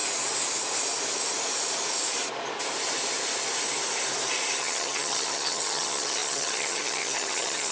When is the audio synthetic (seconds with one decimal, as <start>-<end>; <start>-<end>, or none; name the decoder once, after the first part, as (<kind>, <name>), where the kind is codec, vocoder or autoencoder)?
4.6-7.7 (vocoder, HiFi-GAN)